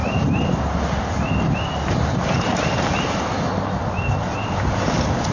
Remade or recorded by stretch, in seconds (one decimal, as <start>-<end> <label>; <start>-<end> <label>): 0.0-5.3 recorded